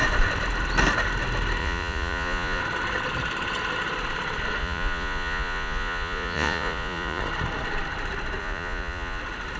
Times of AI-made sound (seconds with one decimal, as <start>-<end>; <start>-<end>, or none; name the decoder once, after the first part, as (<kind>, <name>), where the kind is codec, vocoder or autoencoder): 1.6-2.6 (vocoder, Vocos); 4.6-7.2; 8.4-9.2